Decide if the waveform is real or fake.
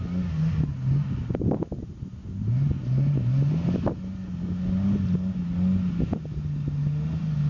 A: real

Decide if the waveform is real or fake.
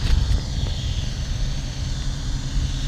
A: fake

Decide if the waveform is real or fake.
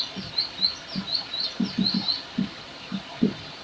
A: real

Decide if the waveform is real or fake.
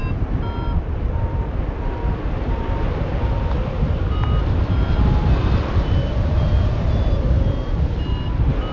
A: real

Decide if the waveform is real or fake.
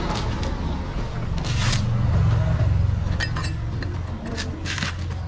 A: real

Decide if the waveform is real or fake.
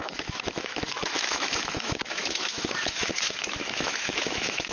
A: fake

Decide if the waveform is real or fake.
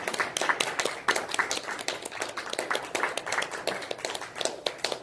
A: real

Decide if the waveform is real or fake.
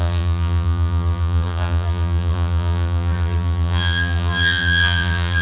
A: fake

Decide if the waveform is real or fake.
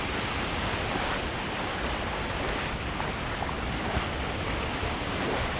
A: real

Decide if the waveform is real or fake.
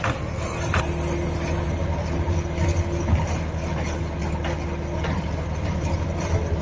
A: real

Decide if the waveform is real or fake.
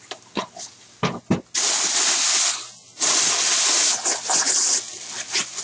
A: real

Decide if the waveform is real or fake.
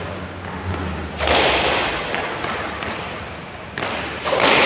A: real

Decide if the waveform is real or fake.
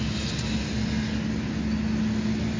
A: real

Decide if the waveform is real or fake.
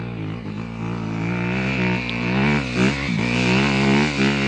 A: real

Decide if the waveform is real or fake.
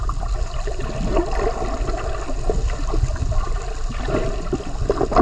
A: real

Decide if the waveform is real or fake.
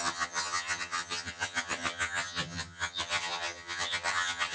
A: fake